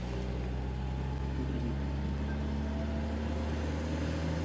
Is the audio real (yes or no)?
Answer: yes